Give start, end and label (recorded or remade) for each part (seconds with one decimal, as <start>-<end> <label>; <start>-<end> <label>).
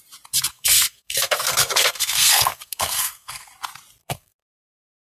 0.0-0.5 recorded; 0.5-3.5 remade; 3.5-4.0 recorded; 4.0-5.1 remade